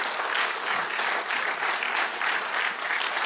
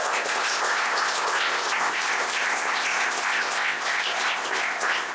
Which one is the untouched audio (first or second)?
first